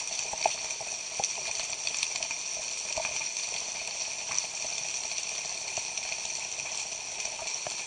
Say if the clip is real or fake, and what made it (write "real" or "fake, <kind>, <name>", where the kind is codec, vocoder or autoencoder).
real